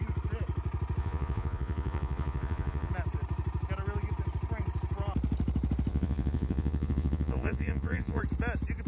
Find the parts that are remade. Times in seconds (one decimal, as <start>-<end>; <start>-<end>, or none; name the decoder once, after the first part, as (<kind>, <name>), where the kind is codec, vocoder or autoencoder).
1.0-2.9 (vocoder, Vocos); 5.9-8.2